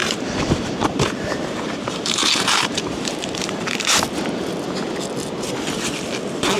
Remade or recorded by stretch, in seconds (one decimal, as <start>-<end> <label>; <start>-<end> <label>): 0.0-4.0 remade; 4.0-6.6 recorded